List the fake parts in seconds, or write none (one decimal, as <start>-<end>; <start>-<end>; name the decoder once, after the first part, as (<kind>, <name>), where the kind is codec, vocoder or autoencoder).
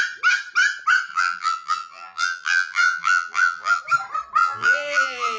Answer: 1.1-3.8 (vocoder, BigVGAN v2); 4.4-5.4